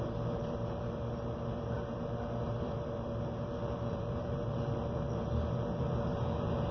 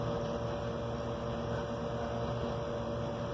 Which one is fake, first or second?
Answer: first